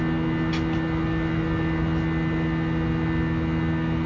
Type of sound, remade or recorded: recorded